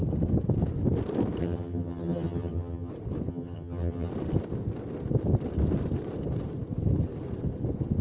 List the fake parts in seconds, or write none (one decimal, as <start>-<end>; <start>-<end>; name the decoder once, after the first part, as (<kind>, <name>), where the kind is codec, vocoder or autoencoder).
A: 1.4-2.9 (vocoder, HiFi-GAN); 3.3-4.1